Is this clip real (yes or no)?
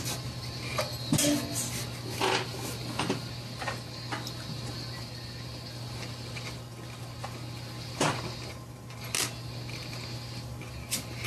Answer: yes